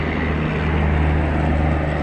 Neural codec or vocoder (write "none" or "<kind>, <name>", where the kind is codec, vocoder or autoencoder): none